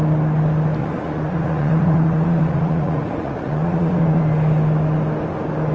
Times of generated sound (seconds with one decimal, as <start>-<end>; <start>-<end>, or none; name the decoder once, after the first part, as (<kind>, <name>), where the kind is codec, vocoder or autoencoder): 0.8-4.2 (vocoder, Vocos)